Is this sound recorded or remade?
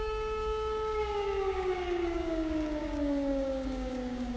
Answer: remade